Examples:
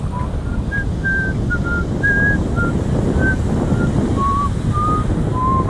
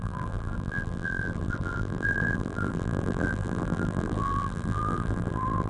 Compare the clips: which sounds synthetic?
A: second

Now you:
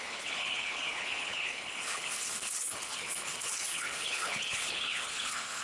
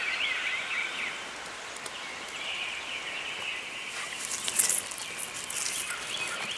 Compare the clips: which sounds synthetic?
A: first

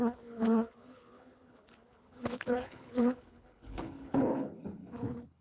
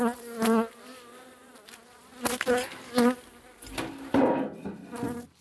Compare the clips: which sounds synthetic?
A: first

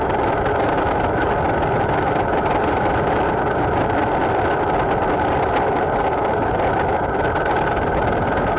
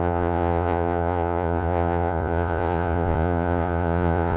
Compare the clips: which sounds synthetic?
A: second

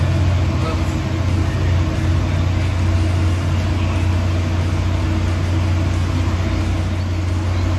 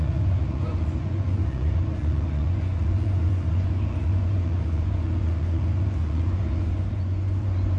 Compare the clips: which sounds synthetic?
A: second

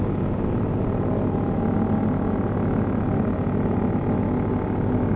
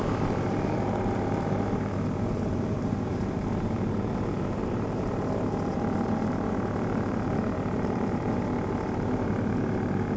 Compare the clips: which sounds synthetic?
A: second